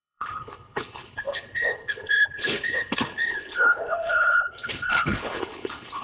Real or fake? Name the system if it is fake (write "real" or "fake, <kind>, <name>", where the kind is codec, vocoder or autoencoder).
fake, codec, HILCodec